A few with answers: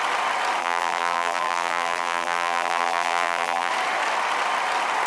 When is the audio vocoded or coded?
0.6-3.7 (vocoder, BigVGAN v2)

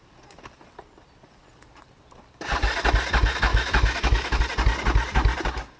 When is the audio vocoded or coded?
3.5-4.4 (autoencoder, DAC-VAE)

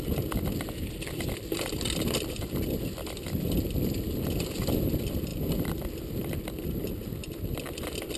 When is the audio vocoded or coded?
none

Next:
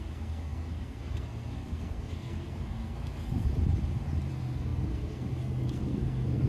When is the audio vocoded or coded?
0.0-3.5 (codec, SNAC); 4.3-6.5

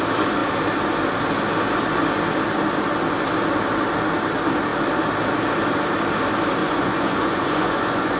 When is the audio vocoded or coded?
6.6-8.2 (vocoder, Vocos)

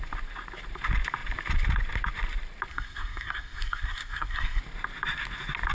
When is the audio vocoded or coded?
2.7-4.6 (codec, SNAC)